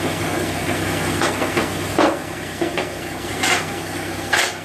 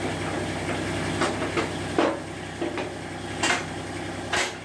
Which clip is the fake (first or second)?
first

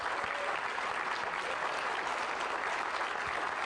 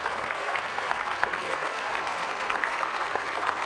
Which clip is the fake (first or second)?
second